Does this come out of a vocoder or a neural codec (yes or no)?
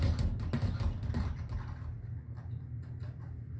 no